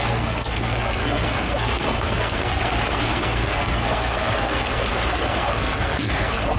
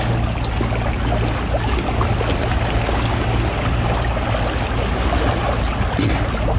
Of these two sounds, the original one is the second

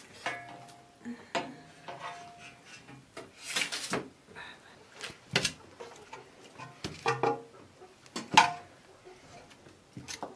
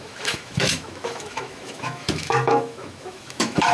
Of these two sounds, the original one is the first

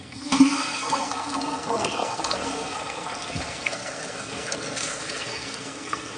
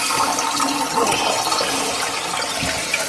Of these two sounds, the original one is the second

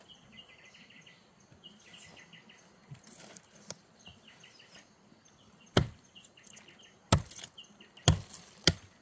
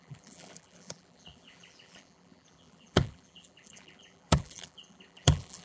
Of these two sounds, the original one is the first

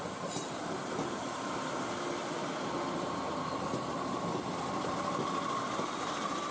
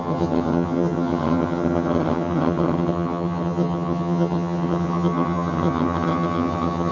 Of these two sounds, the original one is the first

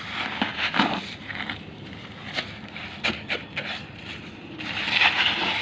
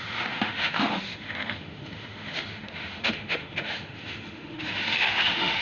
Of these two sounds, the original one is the first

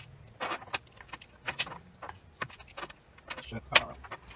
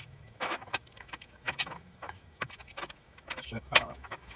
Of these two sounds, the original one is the first